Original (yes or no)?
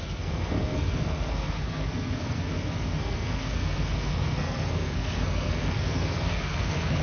no